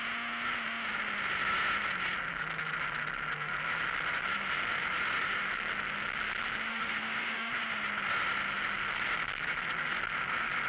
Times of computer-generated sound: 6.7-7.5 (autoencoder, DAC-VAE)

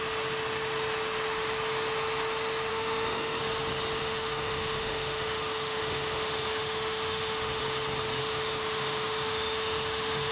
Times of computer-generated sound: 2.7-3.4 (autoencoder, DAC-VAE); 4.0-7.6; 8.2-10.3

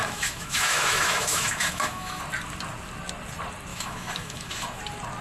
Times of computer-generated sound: 0.0-2.2 (autoencoder, DAC-VAE); 3.7-4.8